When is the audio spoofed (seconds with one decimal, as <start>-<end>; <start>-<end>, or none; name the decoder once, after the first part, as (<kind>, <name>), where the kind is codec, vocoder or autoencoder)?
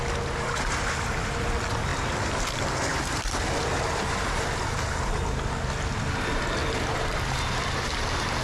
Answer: 2.9-4.5 (vocoder, BigVGAN v2)